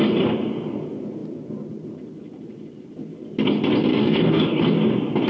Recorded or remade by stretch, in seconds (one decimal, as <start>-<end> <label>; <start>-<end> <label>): 0.0-3.9 recorded; 3.9-4.6 remade; 4.6-5.3 recorded